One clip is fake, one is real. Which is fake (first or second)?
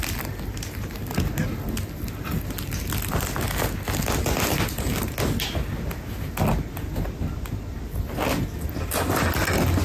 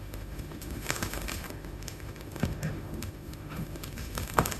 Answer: second